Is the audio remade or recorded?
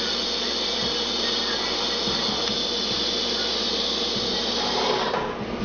recorded